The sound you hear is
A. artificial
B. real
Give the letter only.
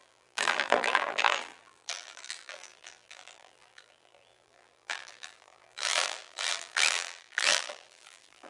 A